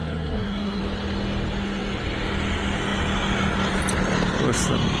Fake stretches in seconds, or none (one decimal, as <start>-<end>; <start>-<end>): 0.0-0.8